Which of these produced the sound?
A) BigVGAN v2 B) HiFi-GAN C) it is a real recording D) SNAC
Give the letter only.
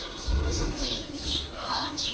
D